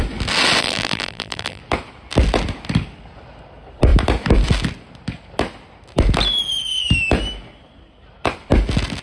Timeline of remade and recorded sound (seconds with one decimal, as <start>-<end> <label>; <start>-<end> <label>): 0.0-0.6 recorded; 0.6-1.6 remade; 1.6-9.0 recorded